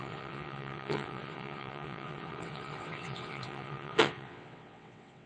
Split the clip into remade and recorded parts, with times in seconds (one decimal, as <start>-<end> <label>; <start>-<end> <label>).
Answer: 0.0-5.3 remade